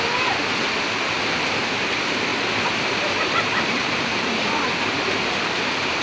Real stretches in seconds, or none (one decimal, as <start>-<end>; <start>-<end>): 0.0-2.3